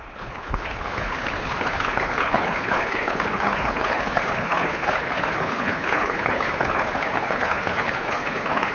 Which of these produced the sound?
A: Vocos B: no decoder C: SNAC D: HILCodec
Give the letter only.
D